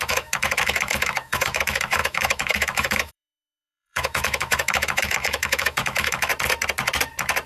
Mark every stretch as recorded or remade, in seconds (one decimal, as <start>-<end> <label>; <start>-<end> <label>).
0.0-6.3 remade; 6.3-7.5 recorded